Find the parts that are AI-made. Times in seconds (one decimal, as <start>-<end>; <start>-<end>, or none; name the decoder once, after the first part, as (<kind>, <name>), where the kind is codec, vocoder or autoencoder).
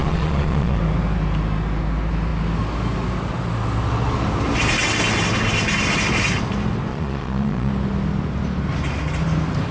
0.0-0.8 (vocoder, Vocos); 6.9-7.7